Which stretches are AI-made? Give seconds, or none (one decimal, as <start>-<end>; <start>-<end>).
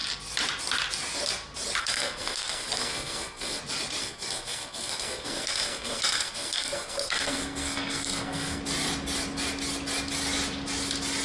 1.8-3.6; 4.0-8.6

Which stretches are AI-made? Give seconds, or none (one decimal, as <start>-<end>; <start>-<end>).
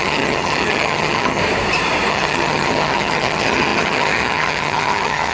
0.0-1.4; 2.1-5.3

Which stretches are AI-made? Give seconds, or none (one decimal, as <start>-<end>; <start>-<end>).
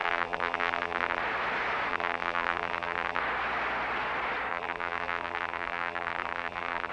0.0-1.2; 1.9-3.2; 4.5-6.9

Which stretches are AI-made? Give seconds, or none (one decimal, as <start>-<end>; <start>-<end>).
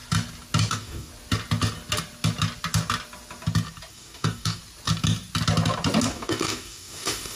0.7-1.1; 3.9-4.6; 6.1-7.4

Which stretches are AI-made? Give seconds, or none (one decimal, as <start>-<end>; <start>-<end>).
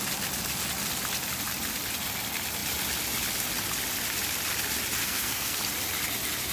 5.0-5.6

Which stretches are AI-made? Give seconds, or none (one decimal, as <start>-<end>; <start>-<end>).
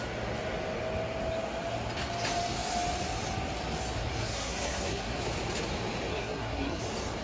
4.2-5.2; 6.1-6.8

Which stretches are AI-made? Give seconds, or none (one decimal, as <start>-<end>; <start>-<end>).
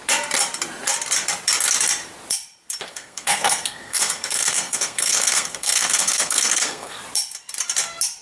2.9-7.0